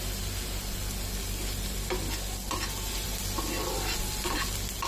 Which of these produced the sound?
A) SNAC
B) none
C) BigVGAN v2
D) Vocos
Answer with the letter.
B